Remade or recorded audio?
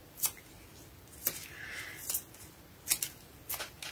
recorded